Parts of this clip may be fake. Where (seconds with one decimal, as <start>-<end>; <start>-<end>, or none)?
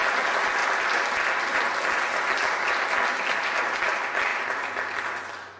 0.6-2.7